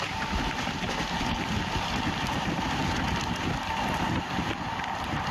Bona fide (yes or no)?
yes